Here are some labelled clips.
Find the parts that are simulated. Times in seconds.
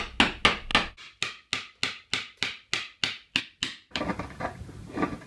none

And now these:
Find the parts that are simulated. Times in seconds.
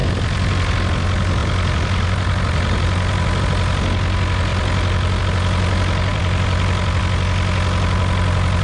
0.0-0.7; 1.4-3.4; 4.5-5.2; 6.1-7.0